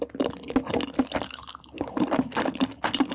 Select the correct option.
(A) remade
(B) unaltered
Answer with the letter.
B